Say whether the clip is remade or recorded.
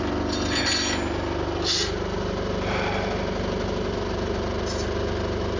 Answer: recorded